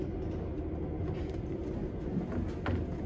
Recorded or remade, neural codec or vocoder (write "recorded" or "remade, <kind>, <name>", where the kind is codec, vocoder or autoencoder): recorded